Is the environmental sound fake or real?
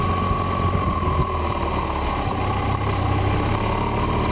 real